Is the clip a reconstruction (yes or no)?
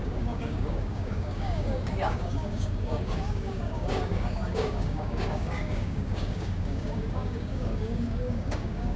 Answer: yes